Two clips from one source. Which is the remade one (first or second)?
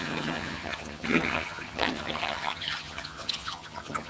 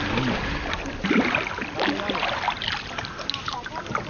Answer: first